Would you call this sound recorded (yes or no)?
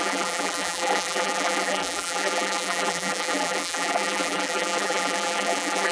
no